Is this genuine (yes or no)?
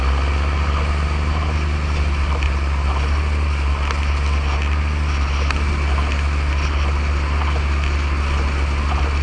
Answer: yes